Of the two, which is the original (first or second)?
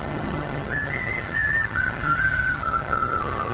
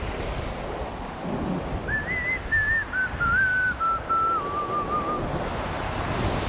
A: second